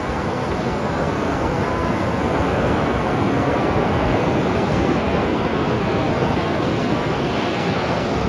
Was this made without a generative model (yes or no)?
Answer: no